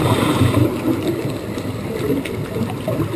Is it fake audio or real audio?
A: real